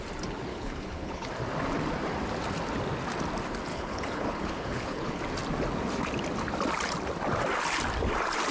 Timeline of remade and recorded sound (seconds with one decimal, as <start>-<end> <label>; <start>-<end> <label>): 0.0-0.5 recorded; 0.5-1.3 remade; 1.3-3.7 recorded; 3.7-5.2 remade; 5.2-8.5 recorded